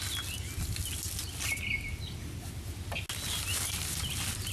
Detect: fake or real real